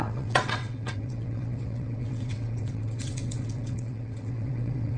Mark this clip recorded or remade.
remade